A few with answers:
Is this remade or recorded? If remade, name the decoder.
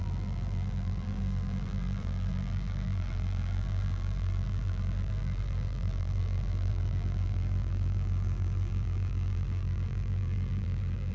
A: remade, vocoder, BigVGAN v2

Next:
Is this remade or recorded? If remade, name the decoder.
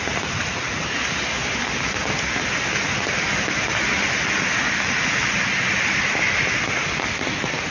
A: recorded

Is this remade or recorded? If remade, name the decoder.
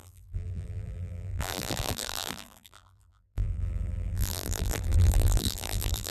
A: remade, vocoder, BigVGAN v2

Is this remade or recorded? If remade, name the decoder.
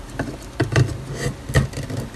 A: recorded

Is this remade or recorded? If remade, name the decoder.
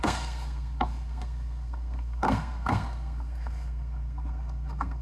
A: remade, codec, SNAC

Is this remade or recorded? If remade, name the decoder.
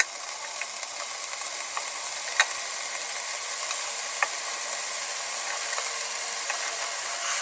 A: recorded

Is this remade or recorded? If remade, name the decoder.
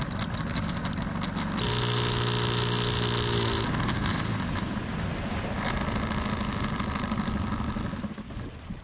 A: recorded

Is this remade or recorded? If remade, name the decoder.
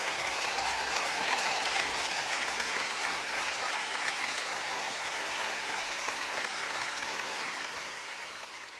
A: remade, codec, SNAC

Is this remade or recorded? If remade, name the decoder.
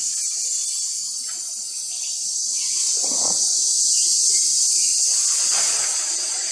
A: recorded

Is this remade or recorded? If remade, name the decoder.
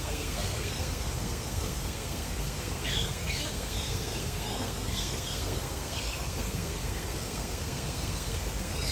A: remade, codec, SNAC